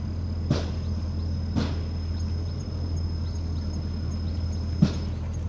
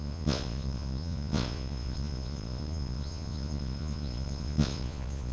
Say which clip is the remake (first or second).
second